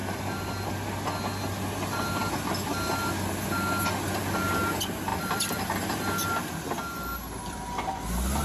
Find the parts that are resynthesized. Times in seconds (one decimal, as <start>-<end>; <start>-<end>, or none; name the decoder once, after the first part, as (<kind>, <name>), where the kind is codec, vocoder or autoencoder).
5.1-6.5 (vocoder, BigVGAN v2)